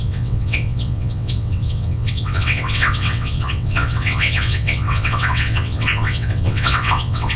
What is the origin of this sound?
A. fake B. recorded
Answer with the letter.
A